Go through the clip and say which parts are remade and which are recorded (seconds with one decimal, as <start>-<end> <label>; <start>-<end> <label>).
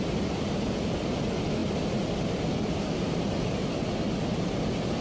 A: 0.0-5.0 recorded